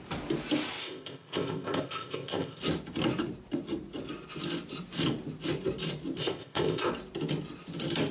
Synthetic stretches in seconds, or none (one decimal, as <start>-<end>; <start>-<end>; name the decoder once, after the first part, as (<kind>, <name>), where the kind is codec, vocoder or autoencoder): 0.8-2.6 (codec, ZipCodec); 6.2-6.9